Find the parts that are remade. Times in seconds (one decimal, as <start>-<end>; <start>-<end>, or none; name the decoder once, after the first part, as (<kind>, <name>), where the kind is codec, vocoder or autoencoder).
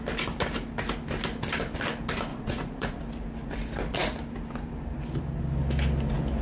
2.3-3.0 (vocoder, Vocos)